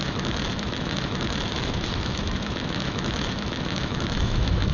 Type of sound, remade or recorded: remade